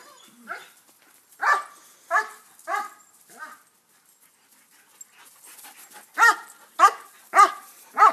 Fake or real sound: real